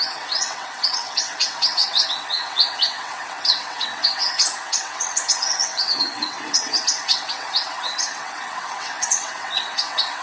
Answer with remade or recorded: remade